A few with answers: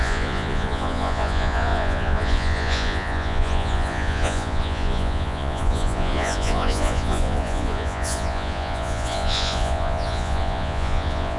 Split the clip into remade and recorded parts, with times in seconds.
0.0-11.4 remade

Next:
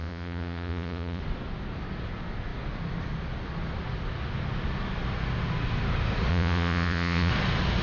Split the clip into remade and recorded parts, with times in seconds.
0.0-1.2 remade; 1.2-6.3 recorded; 6.3-7.3 remade; 7.3-7.8 recorded

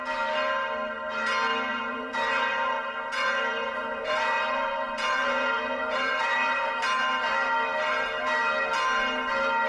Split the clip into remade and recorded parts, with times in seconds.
0.0-1.7 recorded; 1.7-6.7 remade; 6.7-9.7 recorded